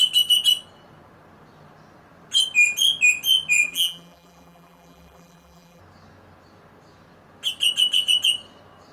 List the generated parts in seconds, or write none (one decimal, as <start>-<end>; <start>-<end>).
3.6-5.8